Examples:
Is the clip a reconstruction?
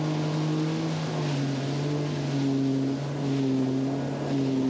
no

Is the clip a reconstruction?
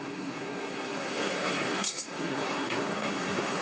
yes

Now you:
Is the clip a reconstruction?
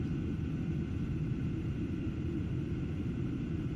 no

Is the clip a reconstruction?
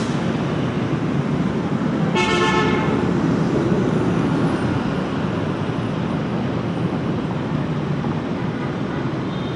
no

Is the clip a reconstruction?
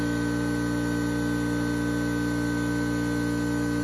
no